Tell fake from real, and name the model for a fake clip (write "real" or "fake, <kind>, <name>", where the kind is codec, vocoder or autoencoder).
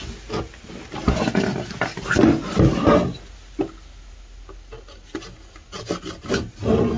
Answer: real